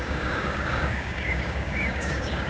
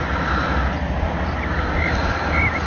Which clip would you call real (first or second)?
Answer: second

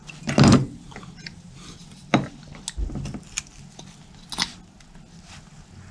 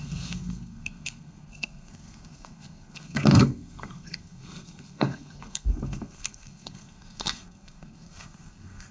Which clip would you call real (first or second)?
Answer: first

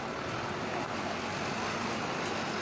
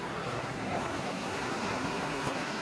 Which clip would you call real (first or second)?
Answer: first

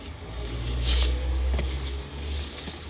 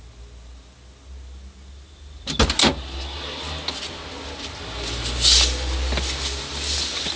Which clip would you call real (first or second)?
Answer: second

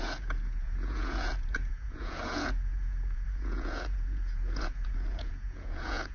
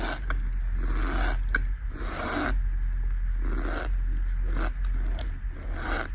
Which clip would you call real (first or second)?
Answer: second